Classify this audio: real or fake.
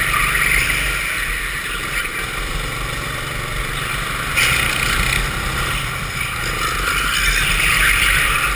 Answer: real